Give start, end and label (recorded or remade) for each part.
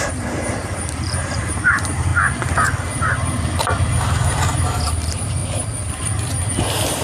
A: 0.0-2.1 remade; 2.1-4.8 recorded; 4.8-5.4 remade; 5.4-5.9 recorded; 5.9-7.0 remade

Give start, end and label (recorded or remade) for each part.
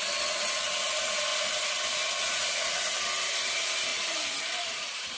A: 0.0-3.9 recorded; 3.9-5.2 remade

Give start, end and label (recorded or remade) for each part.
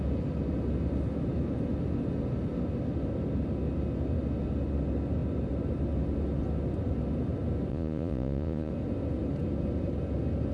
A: 0.0-7.7 recorded; 7.7-8.7 remade; 8.7-10.5 recorded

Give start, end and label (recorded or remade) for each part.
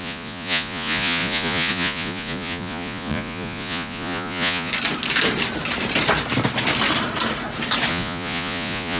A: 0.0-4.7 remade; 4.7-7.9 recorded; 7.9-9.0 remade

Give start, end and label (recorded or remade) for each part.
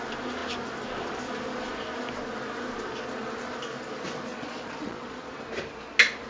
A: 0.0-4.3 recorded; 4.3-5.3 remade; 5.3-6.3 recorded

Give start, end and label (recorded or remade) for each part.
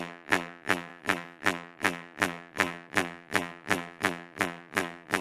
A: 0.0-5.2 remade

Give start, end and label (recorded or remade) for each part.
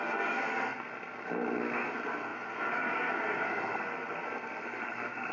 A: 0.0-5.3 remade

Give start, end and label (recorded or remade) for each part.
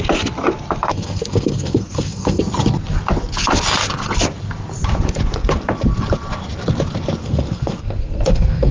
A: 0.0-0.9 recorded; 0.9-2.4 remade; 2.4-7.2 recorded; 7.2-8.7 remade